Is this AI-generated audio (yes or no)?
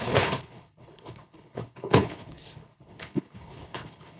yes